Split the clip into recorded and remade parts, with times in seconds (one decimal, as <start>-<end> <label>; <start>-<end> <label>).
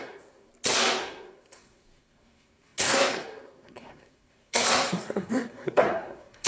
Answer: 0.0-0.5 remade; 0.5-1.0 recorded; 1.0-6.5 remade